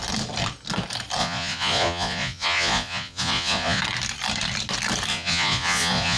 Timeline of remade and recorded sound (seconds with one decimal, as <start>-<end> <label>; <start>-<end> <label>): 0.0-1.2 recorded; 1.2-3.8 remade; 3.8-5.1 recorded; 5.1-6.2 remade